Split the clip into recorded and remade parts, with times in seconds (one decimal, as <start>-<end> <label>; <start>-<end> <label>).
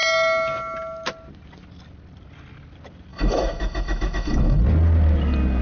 0.0-3.1 recorded; 3.1-4.6 remade; 4.6-5.6 recorded